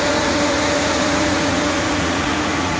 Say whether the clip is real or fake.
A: fake